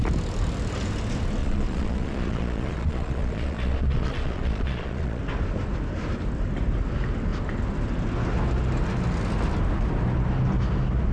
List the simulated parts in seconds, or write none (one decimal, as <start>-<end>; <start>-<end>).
1.4-5.2